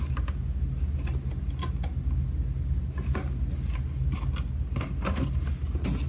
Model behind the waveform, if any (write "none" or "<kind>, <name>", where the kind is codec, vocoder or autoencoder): none